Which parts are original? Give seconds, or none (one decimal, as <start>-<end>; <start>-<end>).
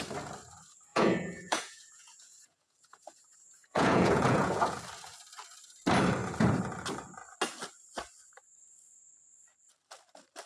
0.0-0.9; 4.8-10.5